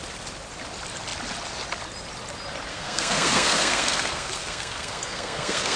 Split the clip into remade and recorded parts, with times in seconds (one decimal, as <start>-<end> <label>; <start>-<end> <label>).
0.0-2.7 recorded; 2.7-5.8 remade